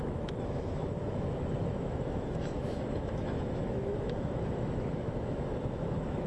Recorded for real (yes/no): no